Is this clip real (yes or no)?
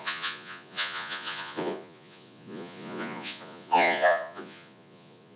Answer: no